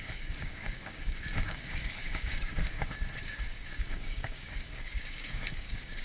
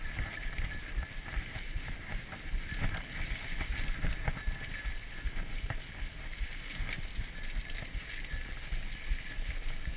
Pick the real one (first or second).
second